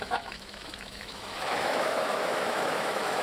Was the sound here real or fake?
fake